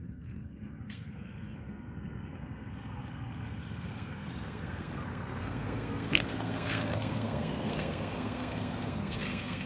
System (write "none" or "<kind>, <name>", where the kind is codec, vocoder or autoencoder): codec, SNAC